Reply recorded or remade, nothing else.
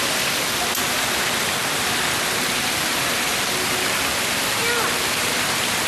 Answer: recorded